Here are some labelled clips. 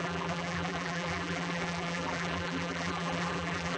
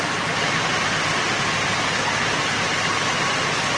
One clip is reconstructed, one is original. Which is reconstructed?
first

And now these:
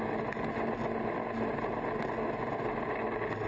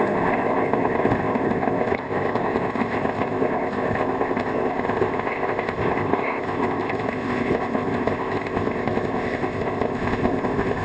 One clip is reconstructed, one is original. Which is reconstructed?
second